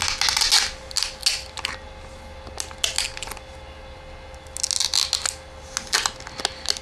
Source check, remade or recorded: recorded